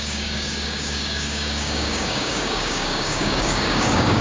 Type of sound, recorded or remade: remade